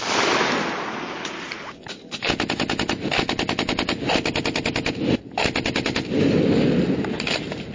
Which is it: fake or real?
real